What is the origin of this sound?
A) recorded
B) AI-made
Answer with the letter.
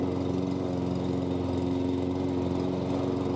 A